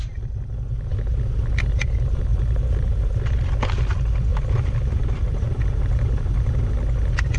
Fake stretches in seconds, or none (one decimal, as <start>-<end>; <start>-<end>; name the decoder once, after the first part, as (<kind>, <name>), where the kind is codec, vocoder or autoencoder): 2.3-3.1 (vocoder, BigVGAN v2); 4.3-6.7